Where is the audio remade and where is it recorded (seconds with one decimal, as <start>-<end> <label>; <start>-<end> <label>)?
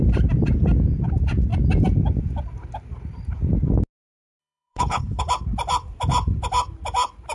0.0-4.4 recorded; 4.4-5.2 remade; 5.2-7.3 recorded